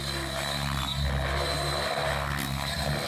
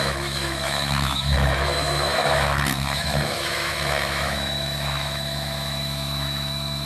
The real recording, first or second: first